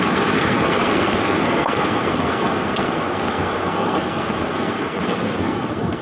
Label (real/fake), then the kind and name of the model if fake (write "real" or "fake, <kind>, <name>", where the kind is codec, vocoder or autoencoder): fake, codec, SNAC